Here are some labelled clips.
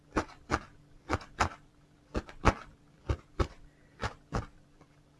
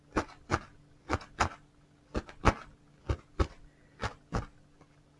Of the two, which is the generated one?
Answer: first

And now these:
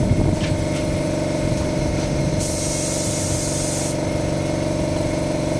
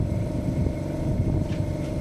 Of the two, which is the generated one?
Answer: second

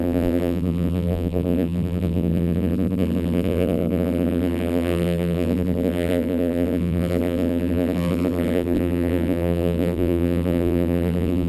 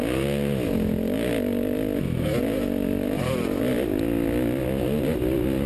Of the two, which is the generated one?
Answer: first